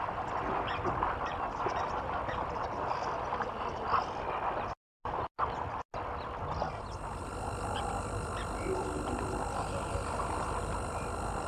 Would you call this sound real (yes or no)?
yes